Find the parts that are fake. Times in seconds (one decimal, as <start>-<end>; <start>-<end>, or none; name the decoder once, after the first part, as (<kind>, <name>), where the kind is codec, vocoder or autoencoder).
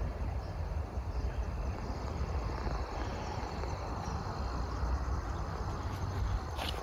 none